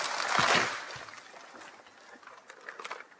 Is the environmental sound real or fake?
real